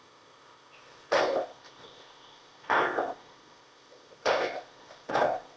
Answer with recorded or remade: remade